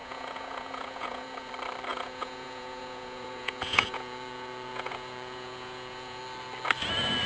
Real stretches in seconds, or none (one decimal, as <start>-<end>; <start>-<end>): 1.5-1.9; 6.2-7.3